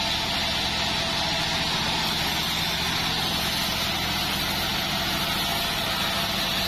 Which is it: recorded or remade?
recorded